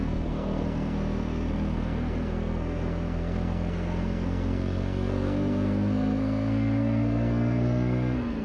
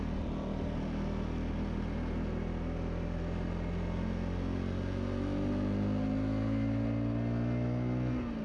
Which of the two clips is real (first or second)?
second